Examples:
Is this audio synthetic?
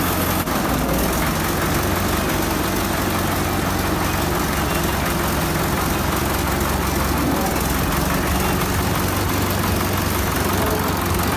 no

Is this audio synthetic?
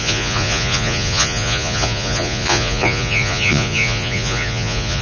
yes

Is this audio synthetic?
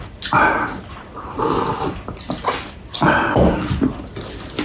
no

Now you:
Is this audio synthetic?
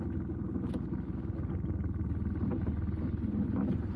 no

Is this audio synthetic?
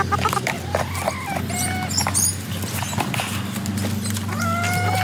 no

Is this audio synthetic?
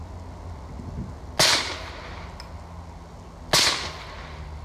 no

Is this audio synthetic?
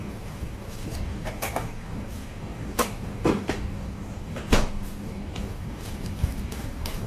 yes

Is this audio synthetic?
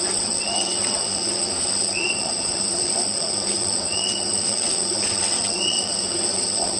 yes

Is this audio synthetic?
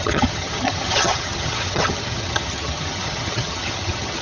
yes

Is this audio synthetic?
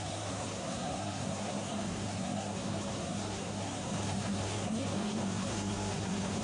yes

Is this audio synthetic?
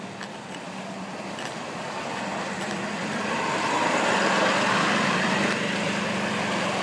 yes